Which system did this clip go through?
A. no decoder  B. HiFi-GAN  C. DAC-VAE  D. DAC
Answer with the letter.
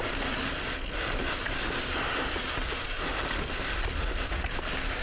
A